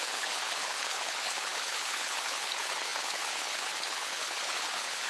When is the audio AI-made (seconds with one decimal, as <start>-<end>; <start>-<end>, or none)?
0.0-5.1